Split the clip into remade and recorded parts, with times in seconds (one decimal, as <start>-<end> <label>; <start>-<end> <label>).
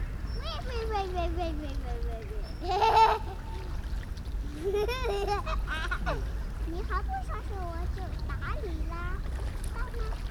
0.0-10.3 recorded